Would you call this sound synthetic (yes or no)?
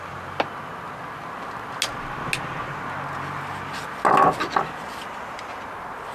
no